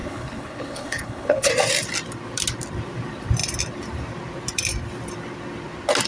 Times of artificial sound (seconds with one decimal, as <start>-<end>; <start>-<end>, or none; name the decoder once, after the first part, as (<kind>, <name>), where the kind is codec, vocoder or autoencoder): 0.0-1.5 (codec, HILCodec)